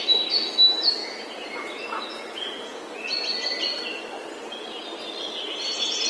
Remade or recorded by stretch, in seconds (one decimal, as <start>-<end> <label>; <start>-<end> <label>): 0.0-1.0 recorded; 1.0-2.8 remade; 2.8-6.1 recorded